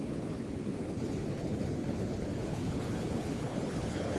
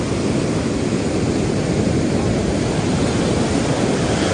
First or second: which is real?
second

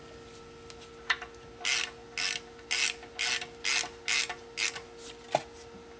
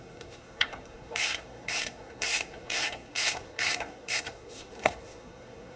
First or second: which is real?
first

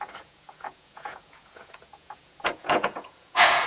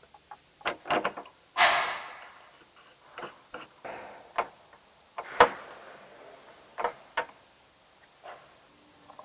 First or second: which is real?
second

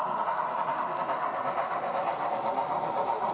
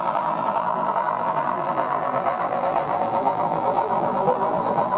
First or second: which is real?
first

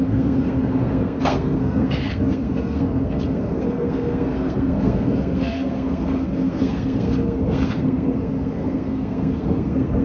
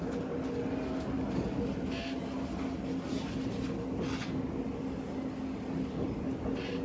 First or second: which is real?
second